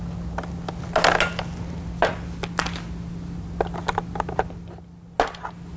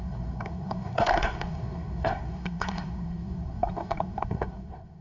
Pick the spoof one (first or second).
second